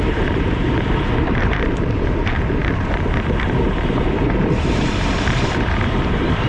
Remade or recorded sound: remade